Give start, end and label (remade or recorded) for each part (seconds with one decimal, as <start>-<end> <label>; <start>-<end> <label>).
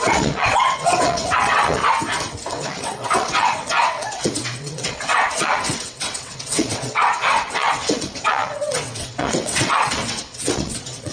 0.0-1.8 remade; 1.8-2.5 recorded; 2.5-11.1 remade